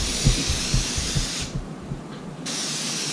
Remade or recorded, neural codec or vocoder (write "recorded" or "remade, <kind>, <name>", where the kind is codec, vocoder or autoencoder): remade, vocoder, BigVGAN v2